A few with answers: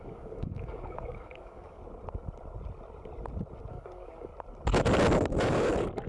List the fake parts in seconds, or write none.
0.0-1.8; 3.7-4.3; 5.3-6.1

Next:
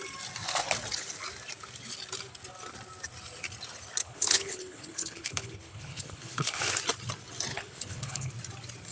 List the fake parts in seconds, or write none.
4.0-6.6; 7.5-8.3

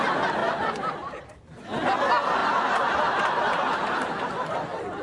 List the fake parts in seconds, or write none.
0.4-1.2; 2.4-4.3